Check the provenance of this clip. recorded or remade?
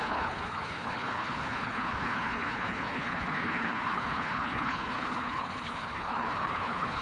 remade